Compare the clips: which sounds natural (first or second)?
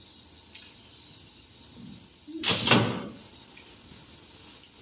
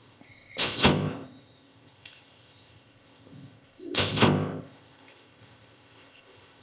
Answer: first